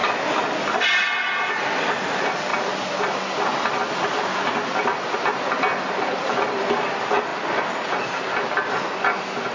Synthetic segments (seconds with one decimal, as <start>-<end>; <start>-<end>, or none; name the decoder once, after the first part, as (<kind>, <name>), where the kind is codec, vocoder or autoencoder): none